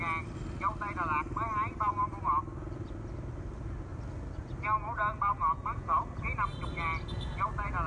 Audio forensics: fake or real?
real